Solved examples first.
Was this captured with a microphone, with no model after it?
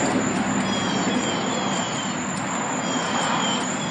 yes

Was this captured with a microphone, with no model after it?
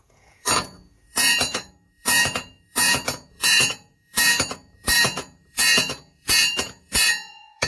no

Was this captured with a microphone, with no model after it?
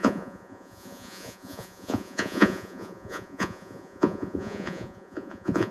no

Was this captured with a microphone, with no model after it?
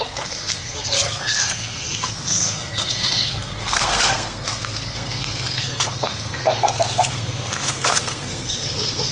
no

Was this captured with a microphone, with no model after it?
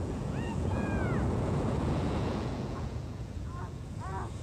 no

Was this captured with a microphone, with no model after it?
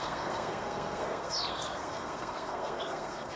no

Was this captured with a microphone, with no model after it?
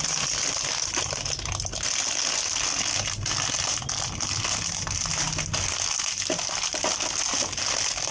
yes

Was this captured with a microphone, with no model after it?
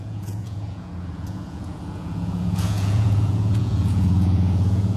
no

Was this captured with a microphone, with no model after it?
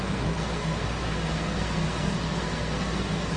no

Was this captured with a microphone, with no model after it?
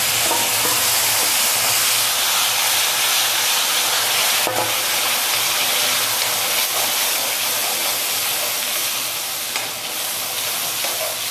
yes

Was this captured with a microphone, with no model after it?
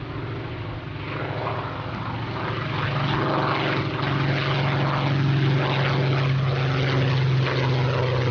yes